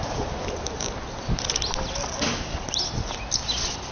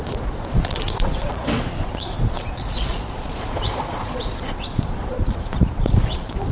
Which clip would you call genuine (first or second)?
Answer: first